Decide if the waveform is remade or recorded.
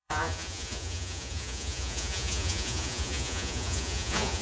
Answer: remade